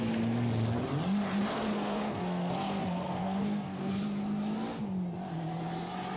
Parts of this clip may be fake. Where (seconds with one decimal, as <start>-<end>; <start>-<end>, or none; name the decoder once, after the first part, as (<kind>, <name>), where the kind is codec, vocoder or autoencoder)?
1.7-4.0 (codec, SNAC)

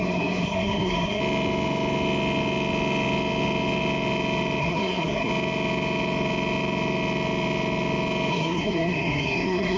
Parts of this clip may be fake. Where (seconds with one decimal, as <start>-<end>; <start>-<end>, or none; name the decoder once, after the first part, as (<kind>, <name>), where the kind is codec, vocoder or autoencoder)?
0.0-1.2 (codec, SNAC); 4.6-5.3; 8.3-9.8

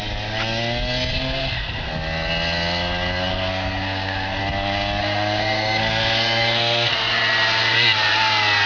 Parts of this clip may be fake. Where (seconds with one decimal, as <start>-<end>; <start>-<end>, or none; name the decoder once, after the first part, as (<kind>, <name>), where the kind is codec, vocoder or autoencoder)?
1.1-1.9 (codec, SNAC); 3.3-4.4; 5.0-6.9